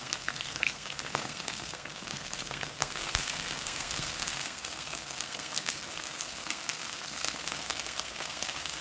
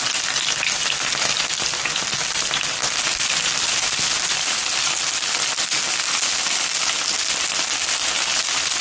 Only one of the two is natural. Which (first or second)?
second